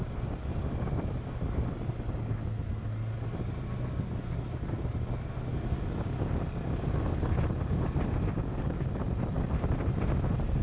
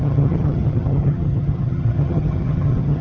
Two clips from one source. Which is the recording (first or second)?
first